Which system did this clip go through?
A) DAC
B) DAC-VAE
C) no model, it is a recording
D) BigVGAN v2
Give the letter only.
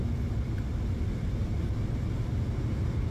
C